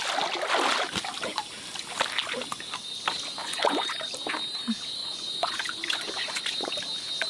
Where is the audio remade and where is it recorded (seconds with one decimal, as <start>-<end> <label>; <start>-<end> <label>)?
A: 0.0-3.4 recorded; 3.4-4.1 remade; 4.1-5.0 recorded; 5.0-6.7 remade; 6.7-7.3 recorded